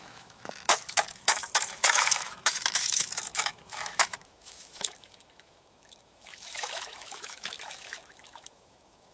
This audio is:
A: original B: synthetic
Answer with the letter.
B